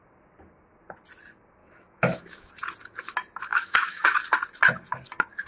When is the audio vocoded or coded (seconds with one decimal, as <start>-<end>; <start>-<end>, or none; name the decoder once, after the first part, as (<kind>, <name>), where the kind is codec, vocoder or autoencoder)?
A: 1.6-2.5 (autoencoder, DAC-VAE); 3.5-4.1